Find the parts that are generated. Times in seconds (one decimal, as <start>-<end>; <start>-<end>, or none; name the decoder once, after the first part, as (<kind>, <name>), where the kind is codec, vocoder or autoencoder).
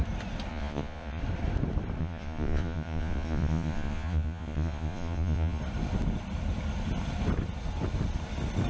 0.5-1.2 (vocoder, Vocos); 2.0-5.6